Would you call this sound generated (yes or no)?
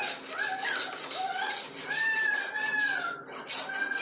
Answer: no